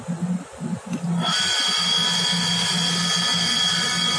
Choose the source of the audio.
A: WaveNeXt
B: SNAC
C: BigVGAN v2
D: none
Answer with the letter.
D